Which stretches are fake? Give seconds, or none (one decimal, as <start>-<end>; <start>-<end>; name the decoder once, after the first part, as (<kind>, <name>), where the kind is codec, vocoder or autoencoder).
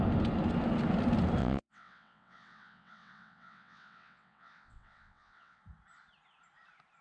1.4-5.6 (vocoder, WaveNeXt)